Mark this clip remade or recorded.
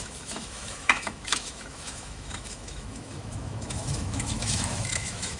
remade